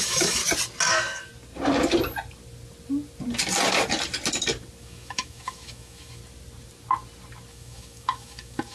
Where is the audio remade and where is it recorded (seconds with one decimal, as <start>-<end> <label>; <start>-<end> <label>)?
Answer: 0.0-0.4 remade; 0.4-0.9 recorded; 0.9-1.3 remade; 1.3-4.8 recorded; 4.8-6.2 remade; 6.2-7.5 recorded; 7.5-8.7 remade